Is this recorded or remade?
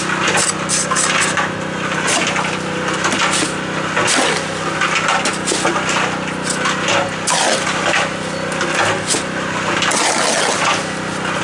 recorded